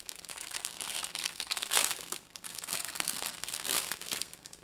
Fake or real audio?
fake